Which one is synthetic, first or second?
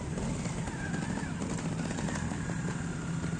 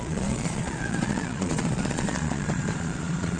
second